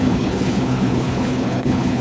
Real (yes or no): no